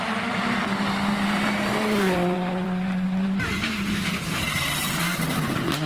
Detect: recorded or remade remade